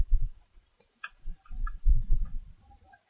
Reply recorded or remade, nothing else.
remade